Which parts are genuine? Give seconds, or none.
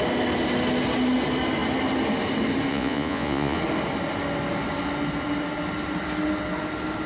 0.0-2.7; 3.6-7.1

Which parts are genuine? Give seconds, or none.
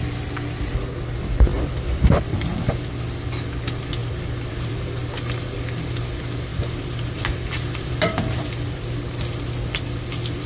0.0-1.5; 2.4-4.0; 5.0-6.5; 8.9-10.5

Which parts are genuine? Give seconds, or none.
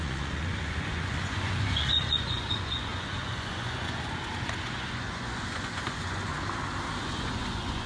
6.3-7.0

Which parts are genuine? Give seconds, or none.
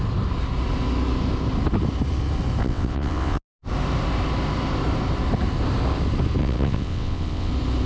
0.0-2.6; 3.4-6.4; 7.5-7.9